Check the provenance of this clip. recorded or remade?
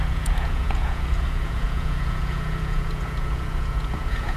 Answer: remade